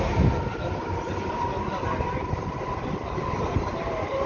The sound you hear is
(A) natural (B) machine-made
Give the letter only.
A